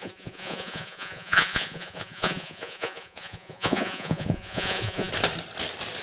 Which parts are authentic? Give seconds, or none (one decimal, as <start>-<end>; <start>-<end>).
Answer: 5.1-6.0